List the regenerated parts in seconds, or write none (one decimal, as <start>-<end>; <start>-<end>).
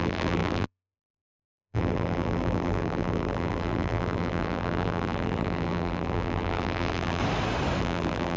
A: 0.0-7.2; 7.8-8.4